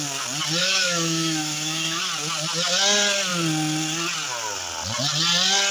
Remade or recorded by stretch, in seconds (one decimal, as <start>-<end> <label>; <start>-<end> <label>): 0.0-0.6 recorded; 0.6-2.0 remade; 2.0-5.7 recorded